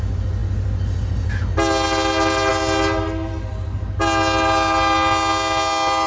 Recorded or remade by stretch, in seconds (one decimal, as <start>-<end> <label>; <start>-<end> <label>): 0.0-6.1 recorded